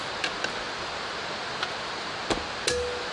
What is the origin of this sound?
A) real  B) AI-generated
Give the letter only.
A